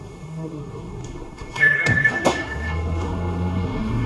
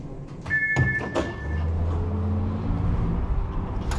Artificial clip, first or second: first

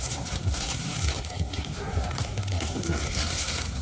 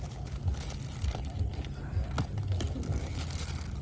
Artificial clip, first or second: first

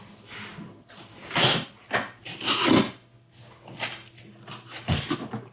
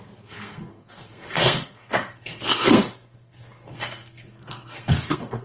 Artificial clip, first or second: second